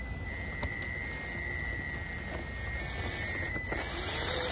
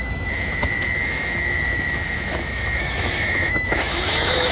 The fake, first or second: second